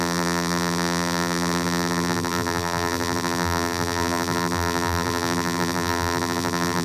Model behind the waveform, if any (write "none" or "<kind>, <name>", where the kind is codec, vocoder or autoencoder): vocoder, BigVGAN v2